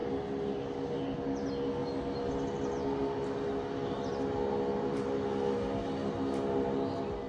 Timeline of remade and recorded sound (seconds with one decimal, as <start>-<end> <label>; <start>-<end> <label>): 0.0-7.3 recorded